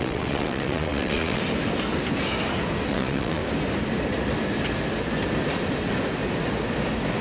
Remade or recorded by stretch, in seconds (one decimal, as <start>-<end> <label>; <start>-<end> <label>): 0.0-1.4 remade; 1.4-2.9 recorded; 2.9-3.4 remade; 3.4-7.2 recorded